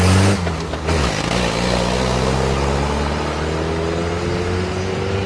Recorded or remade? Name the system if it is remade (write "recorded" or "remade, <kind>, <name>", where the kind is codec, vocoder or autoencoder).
recorded